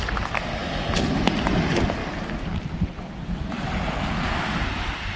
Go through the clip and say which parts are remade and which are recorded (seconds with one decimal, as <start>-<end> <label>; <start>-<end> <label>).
0.0-5.2 recorded